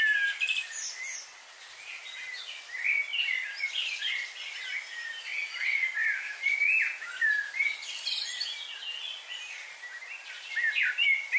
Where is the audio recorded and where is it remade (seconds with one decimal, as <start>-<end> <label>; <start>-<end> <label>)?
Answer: 0.0-11.4 recorded